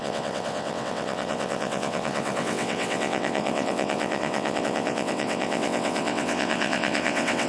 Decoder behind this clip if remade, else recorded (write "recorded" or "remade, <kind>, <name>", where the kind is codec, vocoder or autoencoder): remade, vocoder, WaveNeXt